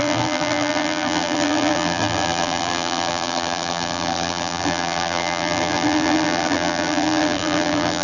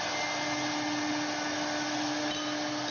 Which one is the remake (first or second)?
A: first